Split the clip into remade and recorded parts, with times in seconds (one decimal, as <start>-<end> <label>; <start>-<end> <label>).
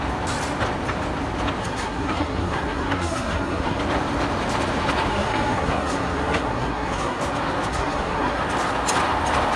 0.0-1.6 recorded; 1.6-3.8 remade; 3.8-5.1 recorded; 5.1-7.2 remade; 7.2-7.7 recorded; 7.7-8.4 remade; 8.4-9.6 recorded